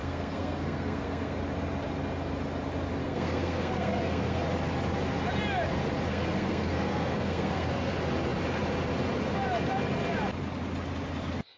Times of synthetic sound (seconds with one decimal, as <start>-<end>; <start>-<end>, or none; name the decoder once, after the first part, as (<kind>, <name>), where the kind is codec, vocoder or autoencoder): 0.0-1.4 (codec, SNAC); 3.0-4.4; 6.1-7.9